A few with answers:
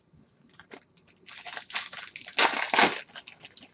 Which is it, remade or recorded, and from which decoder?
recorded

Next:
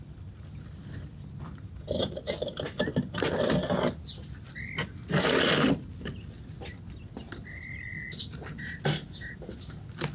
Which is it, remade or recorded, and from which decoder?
recorded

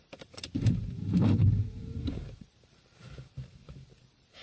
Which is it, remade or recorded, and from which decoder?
remade, vocoder, BigVGAN v2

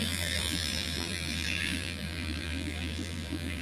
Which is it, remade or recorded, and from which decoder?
remade, vocoder, BigVGAN v2